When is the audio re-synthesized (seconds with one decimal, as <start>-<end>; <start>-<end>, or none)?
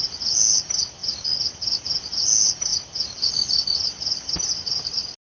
none